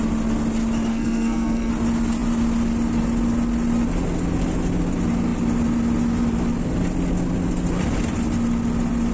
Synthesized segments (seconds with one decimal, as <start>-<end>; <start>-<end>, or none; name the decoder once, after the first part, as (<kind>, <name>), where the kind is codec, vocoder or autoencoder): 0.9-1.7 (codec, SNAC)